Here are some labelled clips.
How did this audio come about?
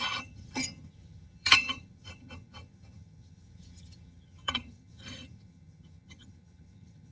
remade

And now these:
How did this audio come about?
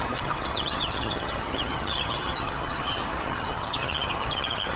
remade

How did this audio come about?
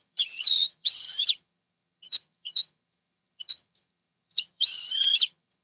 remade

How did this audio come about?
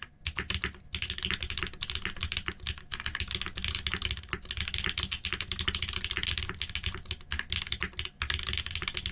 recorded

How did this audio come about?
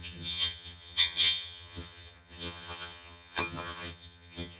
remade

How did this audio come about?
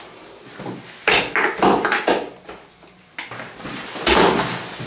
recorded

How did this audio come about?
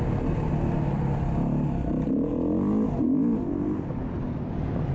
recorded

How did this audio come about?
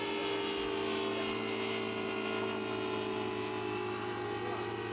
recorded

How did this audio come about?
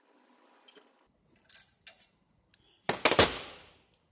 recorded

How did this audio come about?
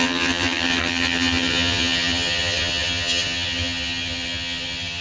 remade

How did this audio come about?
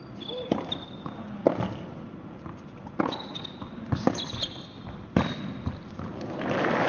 recorded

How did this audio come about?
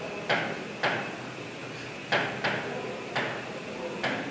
recorded